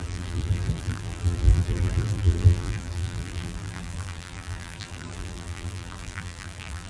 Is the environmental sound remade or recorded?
remade